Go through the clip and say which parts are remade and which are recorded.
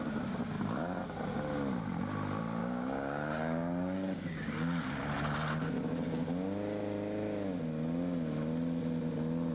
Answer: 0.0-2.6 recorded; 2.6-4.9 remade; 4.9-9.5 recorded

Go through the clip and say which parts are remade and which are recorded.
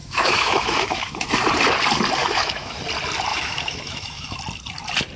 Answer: 0.0-1.3 remade; 1.3-2.2 recorded; 2.2-2.8 remade; 2.8-3.3 recorded; 3.3-4.4 remade; 4.4-5.2 recorded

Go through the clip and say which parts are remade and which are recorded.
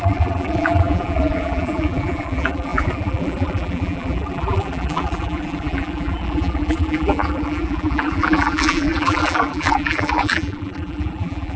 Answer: 0.0-11.6 remade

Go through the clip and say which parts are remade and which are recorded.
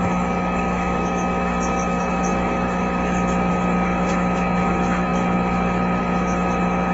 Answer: 0.0-6.9 remade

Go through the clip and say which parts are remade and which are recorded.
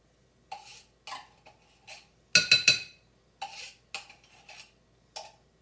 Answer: 0.0-5.6 recorded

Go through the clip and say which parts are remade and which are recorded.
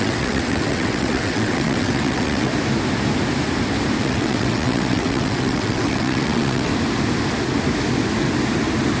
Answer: 0.0-2.5 remade; 2.5-4.0 recorded; 4.0-6.7 remade; 6.7-9.0 recorded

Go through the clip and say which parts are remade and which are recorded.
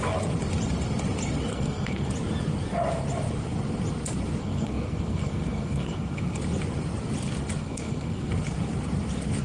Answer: 0.0-1.5 recorded; 1.5-2.1 remade; 2.1-4.4 recorded; 4.4-6.4 remade; 6.4-7.6 recorded; 7.6-8.3 remade; 8.3-9.4 recorded